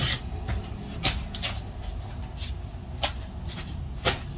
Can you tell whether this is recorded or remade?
recorded